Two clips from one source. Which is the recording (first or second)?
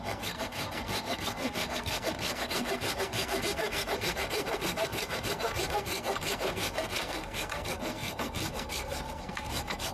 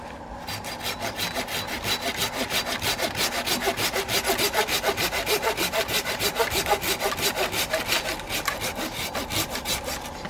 second